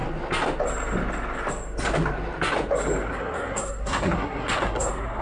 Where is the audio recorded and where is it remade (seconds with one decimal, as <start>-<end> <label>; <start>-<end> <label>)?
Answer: 0.0-3.1 recorded; 3.1-5.2 remade

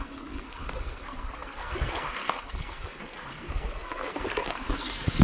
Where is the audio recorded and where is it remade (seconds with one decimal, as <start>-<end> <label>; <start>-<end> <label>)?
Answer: 0.0-5.2 remade

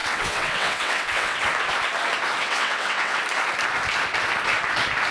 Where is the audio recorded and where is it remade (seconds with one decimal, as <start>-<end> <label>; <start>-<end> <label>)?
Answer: 0.0-1.4 remade; 1.4-2.4 recorded; 2.4-3.2 remade; 3.2-5.1 recorded

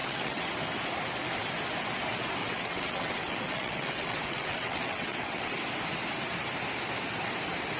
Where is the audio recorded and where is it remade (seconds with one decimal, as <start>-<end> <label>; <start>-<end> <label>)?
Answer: 0.0-0.5 remade; 0.5-2.4 recorded; 2.4-5.5 remade; 5.5-7.8 recorded

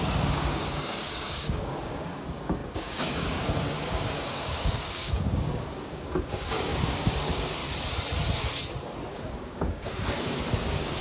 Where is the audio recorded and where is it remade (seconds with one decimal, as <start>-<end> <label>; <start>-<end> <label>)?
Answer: 0.0-7.6 remade; 7.6-9.1 recorded; 9.1-11.0 remade

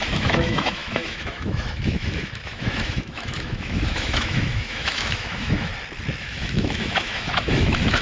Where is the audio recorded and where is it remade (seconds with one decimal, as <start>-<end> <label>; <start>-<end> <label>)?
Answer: 0.0-5.7 remade; 5.7-6.2 recorded; 6.2-8.0 remade

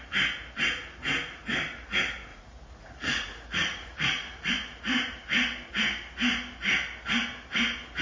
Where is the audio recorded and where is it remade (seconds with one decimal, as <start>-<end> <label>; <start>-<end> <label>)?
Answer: 0.0-2.3 recorded; 2.3-4.5 remade; 4.5-8.0 recorded

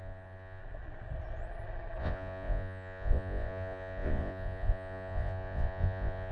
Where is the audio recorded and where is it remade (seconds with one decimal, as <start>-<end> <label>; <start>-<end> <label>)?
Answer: 0.0-0.6 remade; 0.6-2.0 recorded; 2.0-6.3 remade